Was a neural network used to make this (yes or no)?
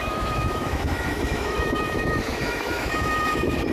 yes